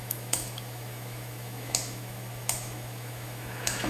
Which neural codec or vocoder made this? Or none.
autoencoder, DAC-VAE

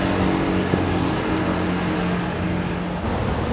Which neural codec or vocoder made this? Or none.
none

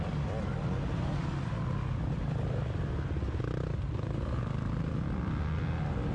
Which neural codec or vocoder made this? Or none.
none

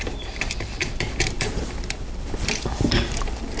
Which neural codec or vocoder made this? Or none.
vocoder, BigVGAN v2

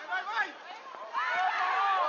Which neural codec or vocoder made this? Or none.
none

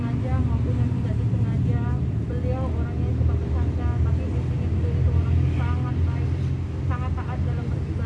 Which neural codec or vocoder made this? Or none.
none